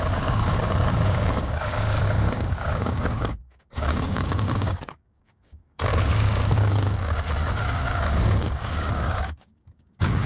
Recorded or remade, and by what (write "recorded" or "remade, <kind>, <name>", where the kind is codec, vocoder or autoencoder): remade, codec, DAC